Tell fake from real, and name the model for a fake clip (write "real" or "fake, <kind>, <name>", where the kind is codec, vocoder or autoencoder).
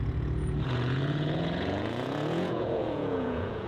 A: fake, vocoder, Vocos